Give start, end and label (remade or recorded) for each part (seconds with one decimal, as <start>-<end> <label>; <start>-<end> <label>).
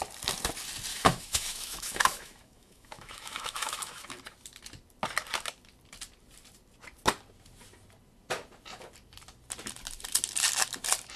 0.0-0.9 recorded; 0.9-4.1 remade; 4.1-11.2 recorded